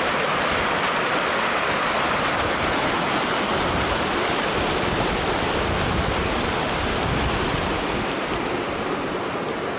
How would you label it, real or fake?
real